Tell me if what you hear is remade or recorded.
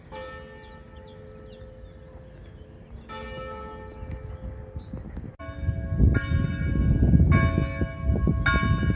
recorded